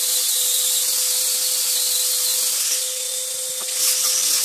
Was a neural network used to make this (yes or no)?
no